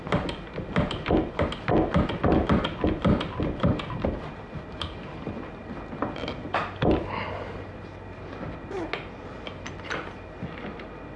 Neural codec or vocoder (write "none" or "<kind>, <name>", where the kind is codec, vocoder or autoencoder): none